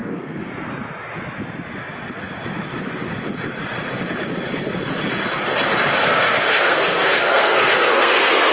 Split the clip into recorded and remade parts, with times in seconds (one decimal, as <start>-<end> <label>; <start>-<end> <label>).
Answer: 0.0-0.5 remade; 0.5-6.0 recorded; 6.0-8.5 remade